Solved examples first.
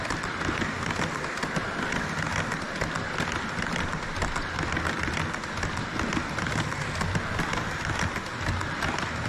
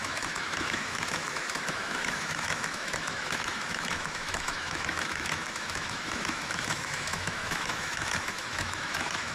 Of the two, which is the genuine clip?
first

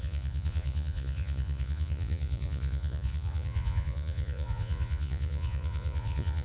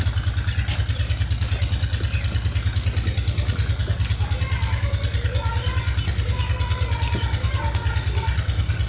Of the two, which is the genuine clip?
second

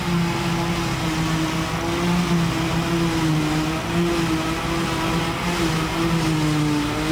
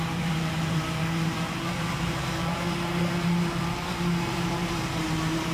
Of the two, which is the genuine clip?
first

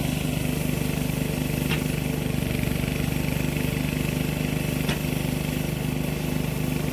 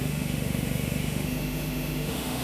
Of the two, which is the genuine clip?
first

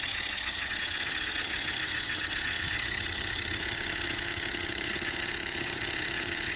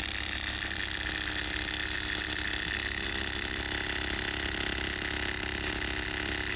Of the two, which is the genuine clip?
second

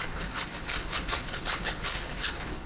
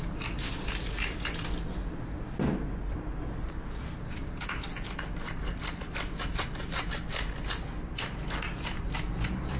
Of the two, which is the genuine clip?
second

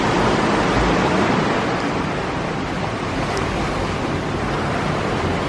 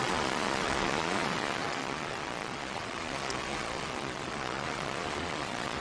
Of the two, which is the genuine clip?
first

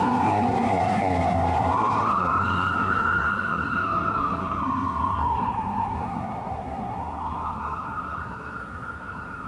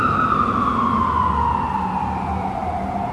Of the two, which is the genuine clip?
second